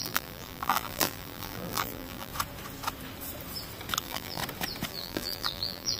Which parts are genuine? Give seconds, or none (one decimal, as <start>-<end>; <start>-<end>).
2.3-4.0; 4.4-4.9